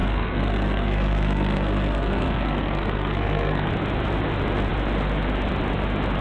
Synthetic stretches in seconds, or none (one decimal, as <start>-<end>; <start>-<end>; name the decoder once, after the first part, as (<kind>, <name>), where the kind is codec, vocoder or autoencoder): 0.0-3.7 (codec, SNAC)